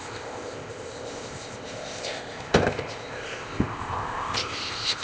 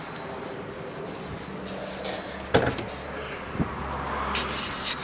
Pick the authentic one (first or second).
second